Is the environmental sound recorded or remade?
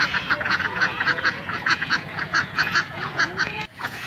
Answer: remade